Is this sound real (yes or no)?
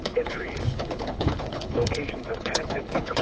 no